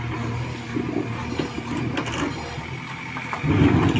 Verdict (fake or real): real